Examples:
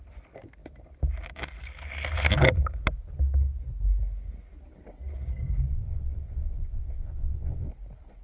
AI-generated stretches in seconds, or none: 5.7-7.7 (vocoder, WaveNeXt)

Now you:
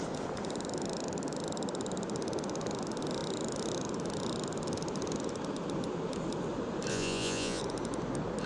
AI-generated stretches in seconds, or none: 6.9-7.6 (vocoder, Vocos)

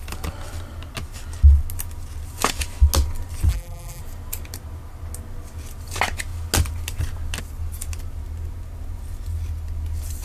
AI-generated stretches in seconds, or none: 3.5-4.0 (vocoder, BigVGAN v2)

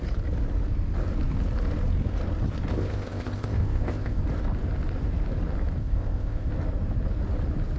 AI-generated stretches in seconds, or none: 2.7-4.2 (codec, ZipCodec); 5.8-6.5